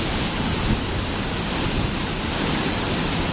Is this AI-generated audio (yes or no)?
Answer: no